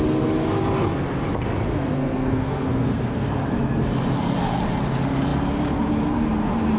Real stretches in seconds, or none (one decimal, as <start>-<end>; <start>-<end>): 0.0-1.7; 3.3-6.8